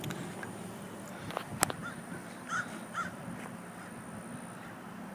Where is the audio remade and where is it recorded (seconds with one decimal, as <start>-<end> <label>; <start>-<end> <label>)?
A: 0.0-5.1 recorded